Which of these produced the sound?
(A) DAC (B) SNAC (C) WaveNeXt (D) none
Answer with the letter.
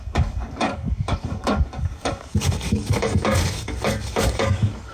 A